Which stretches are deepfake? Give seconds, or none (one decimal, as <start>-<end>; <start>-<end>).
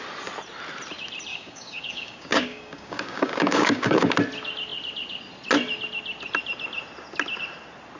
1.3-4.1